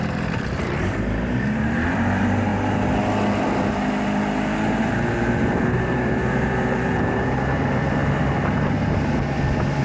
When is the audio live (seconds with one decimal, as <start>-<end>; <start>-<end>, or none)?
2.5-4.9; 8.0-9.8